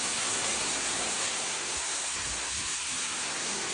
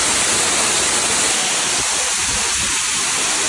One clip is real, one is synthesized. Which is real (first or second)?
second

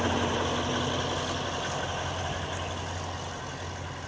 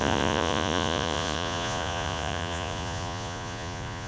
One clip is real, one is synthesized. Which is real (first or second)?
first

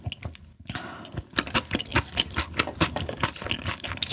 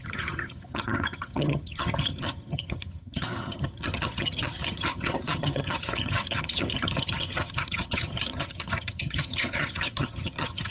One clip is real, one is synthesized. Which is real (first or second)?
first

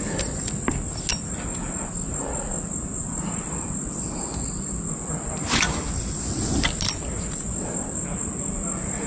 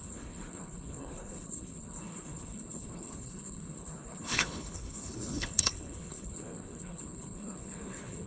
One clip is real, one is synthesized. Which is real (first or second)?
first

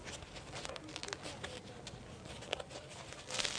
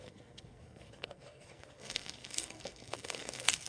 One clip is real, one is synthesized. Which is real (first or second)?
first